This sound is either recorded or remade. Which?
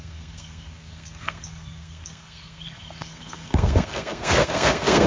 remade